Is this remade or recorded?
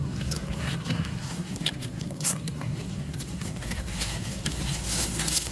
remade